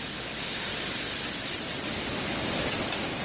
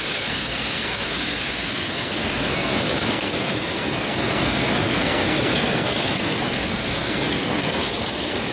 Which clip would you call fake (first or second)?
second